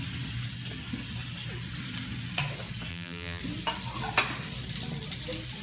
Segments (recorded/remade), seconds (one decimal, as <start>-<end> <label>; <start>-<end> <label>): 0.0-2.9 recorded; 2.9-3.4 remade; 3.4-5.6 recorded